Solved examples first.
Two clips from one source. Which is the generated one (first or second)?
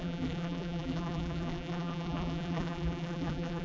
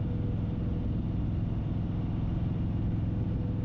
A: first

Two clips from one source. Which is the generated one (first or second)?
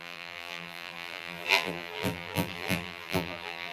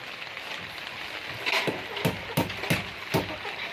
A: first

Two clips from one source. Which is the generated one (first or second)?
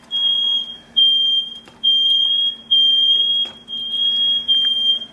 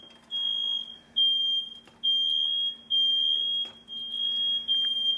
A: first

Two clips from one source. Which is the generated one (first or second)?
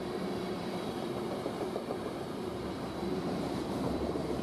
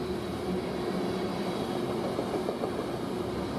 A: first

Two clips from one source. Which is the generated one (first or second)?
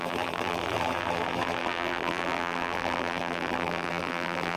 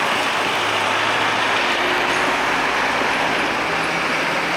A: first